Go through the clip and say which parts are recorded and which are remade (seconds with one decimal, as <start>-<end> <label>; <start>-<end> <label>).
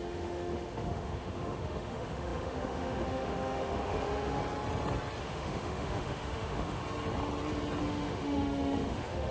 0.0-4.4 remade; 4.4-5.2 recorded; 5.2-6.8 remade; 6.8-7.8 recorded; 7.8-9.3 remade